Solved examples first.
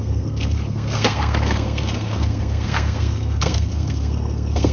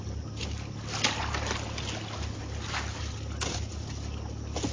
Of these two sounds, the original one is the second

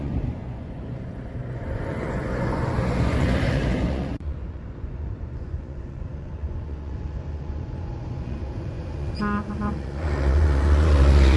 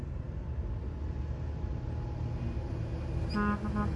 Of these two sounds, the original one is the second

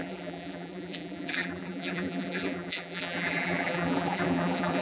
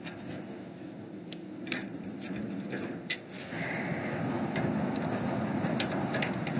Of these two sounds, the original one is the second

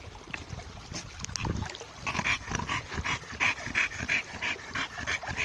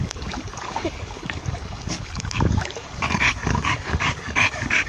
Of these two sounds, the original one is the first